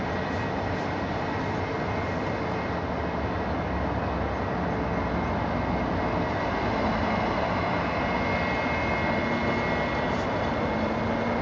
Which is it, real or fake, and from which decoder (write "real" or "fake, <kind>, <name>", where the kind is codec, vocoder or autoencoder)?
real